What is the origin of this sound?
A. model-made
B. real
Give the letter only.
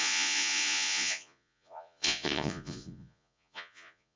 A